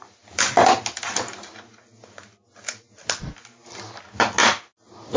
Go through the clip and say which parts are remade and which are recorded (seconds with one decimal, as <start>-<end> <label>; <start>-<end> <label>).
0.0-5.2 recorded